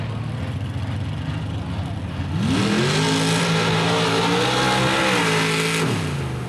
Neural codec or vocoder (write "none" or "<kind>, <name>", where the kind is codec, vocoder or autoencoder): none